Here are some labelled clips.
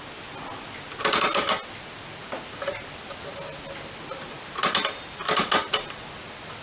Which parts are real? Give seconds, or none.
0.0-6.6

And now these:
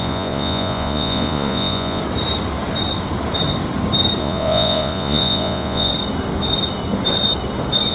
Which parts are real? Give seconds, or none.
2.0-4.2; 5.9-7.9

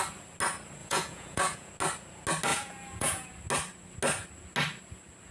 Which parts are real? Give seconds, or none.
0.0-0.8; 1.7-2.5; 3.3-5.3

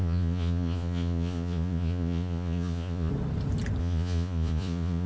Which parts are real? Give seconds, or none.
3.1-3.8